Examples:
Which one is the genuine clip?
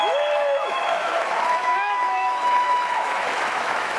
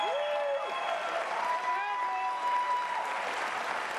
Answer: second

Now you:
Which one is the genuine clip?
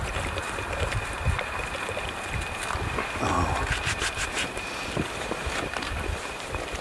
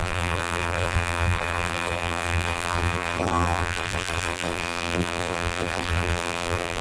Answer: first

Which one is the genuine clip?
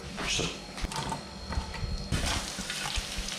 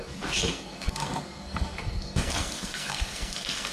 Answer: first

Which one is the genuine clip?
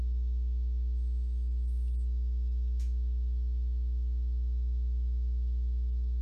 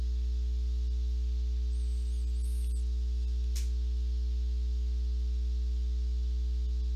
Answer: second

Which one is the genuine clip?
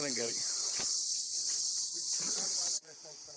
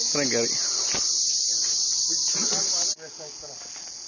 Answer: second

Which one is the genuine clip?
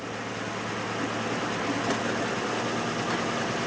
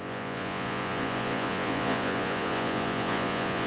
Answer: first